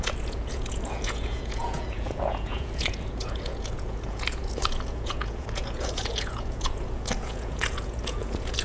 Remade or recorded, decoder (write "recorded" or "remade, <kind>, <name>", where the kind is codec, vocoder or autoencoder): remade, vocoder, Vocos